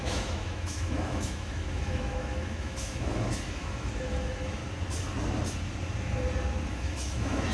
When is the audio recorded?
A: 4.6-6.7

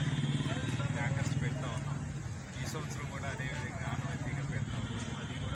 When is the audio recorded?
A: 0.0-3.5; 4.1-4.5

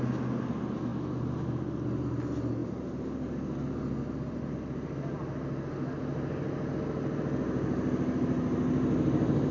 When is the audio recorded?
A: 0.0-9.5

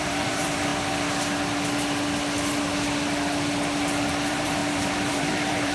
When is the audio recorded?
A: 0.7-4.1

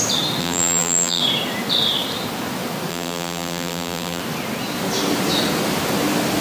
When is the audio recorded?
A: 0.0-0.4; 1.2-2.9; 4.2-6.4

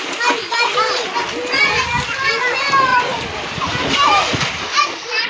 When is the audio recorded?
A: 0.0-5.3